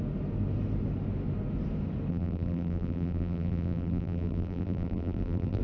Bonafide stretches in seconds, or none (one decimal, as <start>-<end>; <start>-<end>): 0.0-2.1

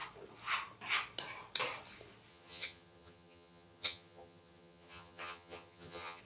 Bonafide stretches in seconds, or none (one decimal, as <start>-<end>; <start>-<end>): 0.0-2.3

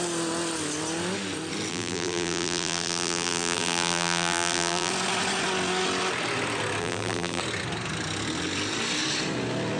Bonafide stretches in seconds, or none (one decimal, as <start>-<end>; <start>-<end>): 0.0-1.7; 4.9-6.8; 7.4-9.8

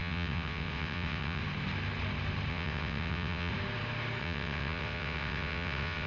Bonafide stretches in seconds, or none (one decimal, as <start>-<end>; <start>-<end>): 1.4-2.5; 3.5-4.2

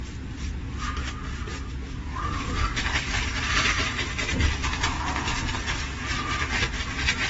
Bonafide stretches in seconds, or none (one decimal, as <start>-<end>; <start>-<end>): 0.0-2.1; 3.1-7.3

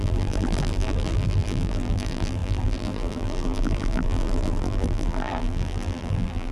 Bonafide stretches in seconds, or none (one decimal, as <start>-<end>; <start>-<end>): none

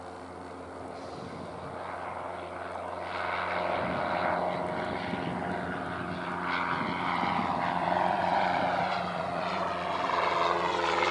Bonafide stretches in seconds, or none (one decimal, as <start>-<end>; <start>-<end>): 0.0-7.8